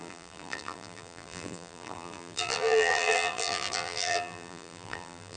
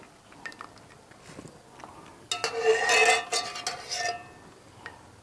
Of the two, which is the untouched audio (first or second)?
second